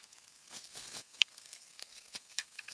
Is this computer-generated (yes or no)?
yes